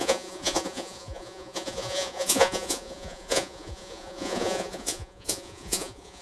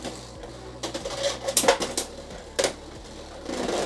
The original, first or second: second